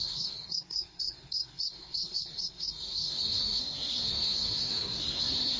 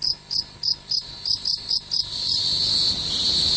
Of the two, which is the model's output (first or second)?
first